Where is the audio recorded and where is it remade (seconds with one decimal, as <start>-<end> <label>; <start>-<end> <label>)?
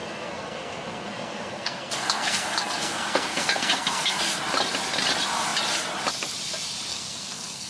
0.0-4.4 remade; 4.4-6.9 recorded; 6.9-7.7 remade